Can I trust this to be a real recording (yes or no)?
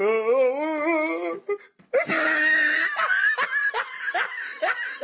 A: yes